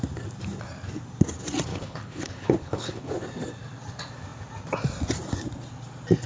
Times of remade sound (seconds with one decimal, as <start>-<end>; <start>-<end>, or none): 1.7-3.1